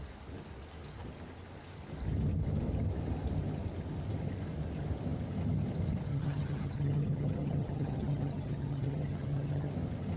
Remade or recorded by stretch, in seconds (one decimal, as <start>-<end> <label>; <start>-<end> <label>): 0.0-6.1 recorded; 6.1-9.7 remade; 9.7-10.2 recorded